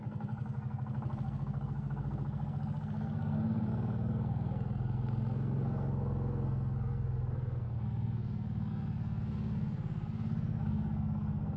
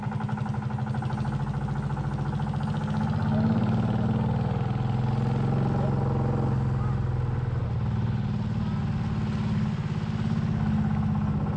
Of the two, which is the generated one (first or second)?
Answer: first